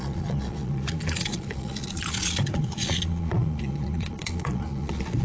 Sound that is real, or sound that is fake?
fake